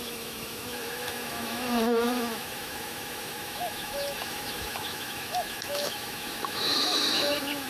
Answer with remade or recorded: remade